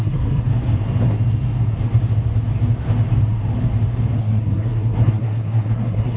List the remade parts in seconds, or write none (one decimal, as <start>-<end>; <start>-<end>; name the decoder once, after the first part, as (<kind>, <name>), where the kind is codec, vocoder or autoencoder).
0.0-0.5 (codec, SNAC); 4.2-6.2